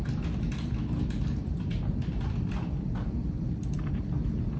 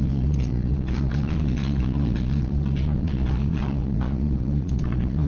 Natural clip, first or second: first